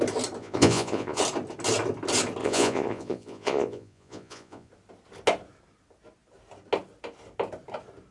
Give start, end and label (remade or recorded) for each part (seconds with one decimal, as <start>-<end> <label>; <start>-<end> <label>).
0.0-0.4 recorded; 0.4-1.2 remade; 1.2-2.4 recorded; 2.4-4.7 remade; 4.7-8.1 recorded